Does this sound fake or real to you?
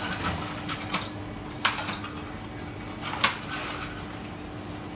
real